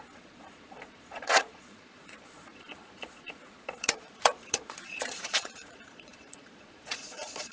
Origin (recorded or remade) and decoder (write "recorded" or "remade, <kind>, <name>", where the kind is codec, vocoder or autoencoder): remade, vocoder, Vocos